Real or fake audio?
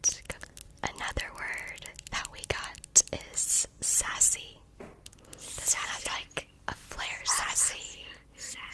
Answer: real